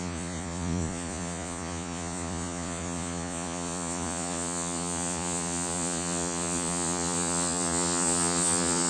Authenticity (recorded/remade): remade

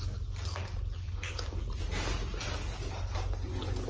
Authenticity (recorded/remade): recorded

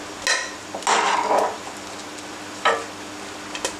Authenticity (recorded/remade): recorded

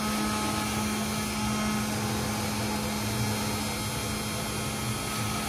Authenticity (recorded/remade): recorded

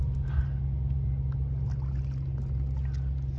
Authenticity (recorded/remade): recorded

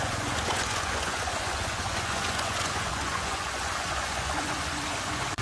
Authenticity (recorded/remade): remade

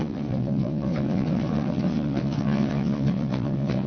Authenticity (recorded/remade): remade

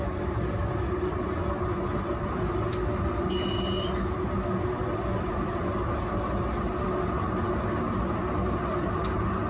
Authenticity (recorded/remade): recorded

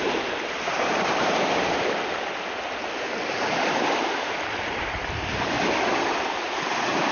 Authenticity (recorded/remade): remade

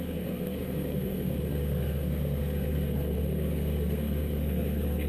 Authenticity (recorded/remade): remade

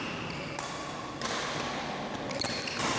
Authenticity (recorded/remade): recorded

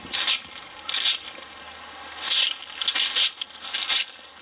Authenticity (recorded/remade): recorded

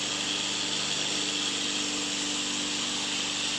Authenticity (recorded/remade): recorded